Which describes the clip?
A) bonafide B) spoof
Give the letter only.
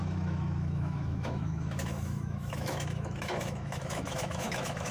B